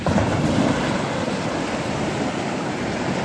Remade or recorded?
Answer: recorded